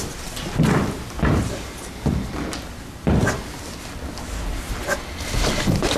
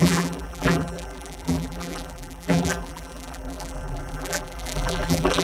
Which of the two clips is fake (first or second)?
second